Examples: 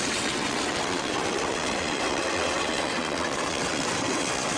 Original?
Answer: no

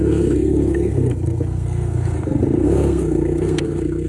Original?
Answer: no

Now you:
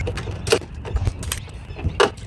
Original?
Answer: yes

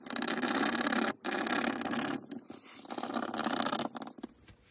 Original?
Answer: yes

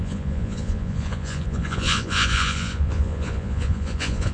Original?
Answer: no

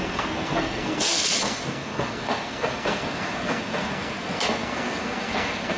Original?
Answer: no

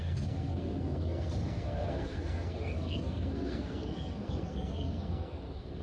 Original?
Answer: no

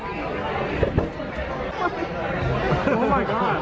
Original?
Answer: yes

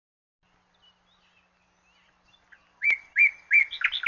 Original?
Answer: yes